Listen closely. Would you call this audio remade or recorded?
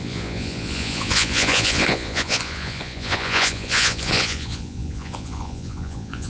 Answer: remade